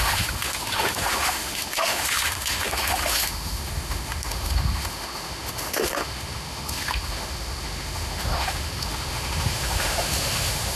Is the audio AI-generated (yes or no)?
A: yes